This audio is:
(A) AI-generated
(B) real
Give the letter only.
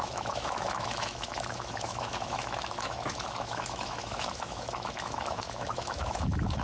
A